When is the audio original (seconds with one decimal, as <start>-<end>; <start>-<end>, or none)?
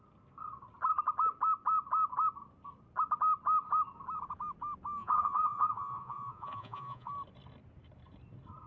0.0-5.0; 7.1-8.7